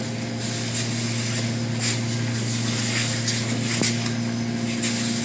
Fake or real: real